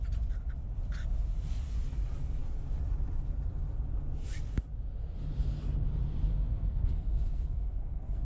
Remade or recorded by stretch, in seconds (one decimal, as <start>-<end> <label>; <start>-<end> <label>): 0.0-6.3 recorded; 6.3-8.2 remade